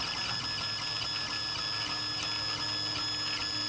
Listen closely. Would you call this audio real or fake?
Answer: real